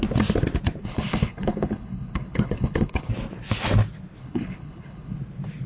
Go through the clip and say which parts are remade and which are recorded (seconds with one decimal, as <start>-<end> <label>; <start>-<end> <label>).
0.0-0.8 recorded; 0.8-3.1 remade; 3.1-4.2 recorded; 4.2-5.2 remade; 5.2-5.7 recorded

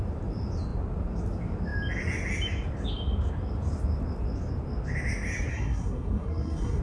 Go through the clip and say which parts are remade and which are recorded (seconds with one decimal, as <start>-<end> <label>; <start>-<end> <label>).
0.0-5.5 recorded; 5.5-6.8 remade

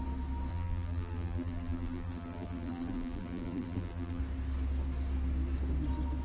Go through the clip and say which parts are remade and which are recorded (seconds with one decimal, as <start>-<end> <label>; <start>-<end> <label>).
0.0-0.5 recorded; 0.5-4.2 remade; 4.2-6.2 recorded

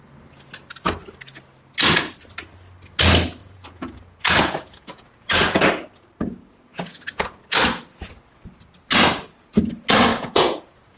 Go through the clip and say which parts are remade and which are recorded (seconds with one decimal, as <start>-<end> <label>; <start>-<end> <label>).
0.0-3.4 recorded; 3.4-5.7 remade; 5.7-6.7 recorded; 6.7-7.4 remade; 7.4-10.1 recorded; 10.1-11.0 remade